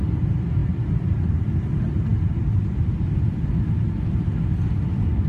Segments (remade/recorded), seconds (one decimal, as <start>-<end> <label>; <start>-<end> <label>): 0.0-0.6 recorded; 0.6-1.3 remade; 1.3-2.1 recorded; 2.1-3.5 remade; 3.5-5.3 recorded